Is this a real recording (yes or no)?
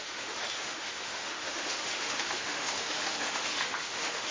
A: no